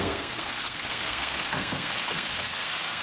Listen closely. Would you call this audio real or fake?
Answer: fake